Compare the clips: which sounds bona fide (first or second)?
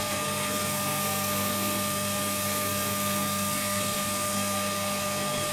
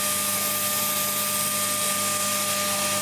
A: second